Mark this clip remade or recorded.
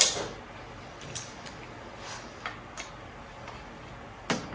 recorded